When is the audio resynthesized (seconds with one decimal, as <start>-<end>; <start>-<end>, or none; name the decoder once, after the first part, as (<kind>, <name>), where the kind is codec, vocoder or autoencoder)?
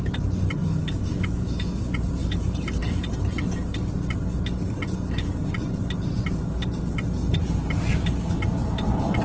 0.6-1.8 (autoencoder, DAC-VAE)